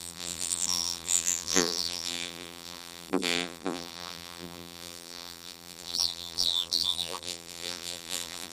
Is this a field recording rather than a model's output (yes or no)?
no